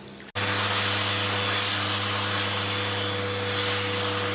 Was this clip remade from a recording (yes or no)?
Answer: no